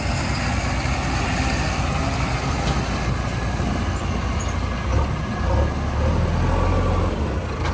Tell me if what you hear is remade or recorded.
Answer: recorded